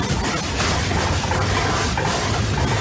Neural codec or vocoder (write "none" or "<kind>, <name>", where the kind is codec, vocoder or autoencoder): none